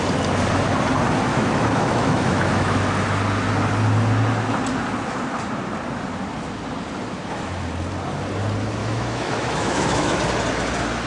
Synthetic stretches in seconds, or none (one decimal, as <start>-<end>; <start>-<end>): 1.3-2.8; 8.8-10.2